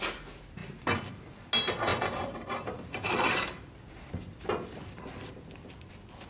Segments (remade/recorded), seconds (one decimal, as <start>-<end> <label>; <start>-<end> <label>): 0.0-0.6 recorded; 0.6-1.5 remade; 1.5-1.9 recorded; 1.9-5.7 remade; 5.7-6.3 recorded